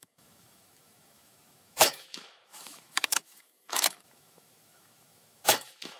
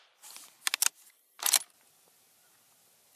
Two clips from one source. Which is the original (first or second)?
second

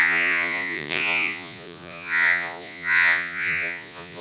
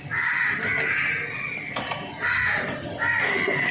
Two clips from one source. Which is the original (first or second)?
second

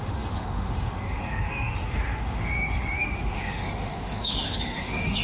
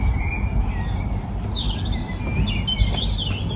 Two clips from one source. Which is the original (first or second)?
second